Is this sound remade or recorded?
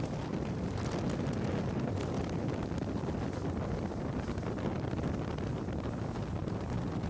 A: recorded